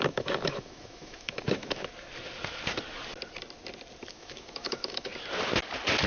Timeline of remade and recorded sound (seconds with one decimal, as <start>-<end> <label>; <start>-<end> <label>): 0.0-1.9 remade; 1.9-4.1 recorded; 4.1-5.1 remade; 5.1-6.1 recorded